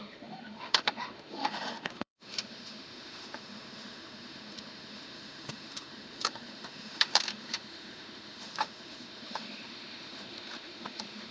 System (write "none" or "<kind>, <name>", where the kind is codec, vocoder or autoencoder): autoencoder, DAC-VAE